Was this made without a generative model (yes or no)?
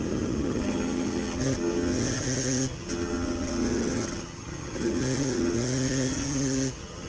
no